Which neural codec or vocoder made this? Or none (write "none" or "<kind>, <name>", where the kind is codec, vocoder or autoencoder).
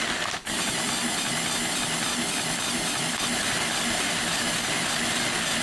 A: none